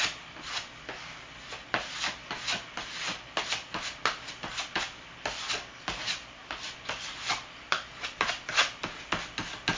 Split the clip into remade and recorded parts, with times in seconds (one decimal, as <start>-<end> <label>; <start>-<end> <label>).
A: 0.0-9.8 recorded